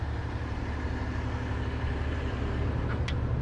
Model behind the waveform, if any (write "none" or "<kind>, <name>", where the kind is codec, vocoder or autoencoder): none